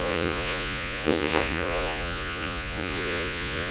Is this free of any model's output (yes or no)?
no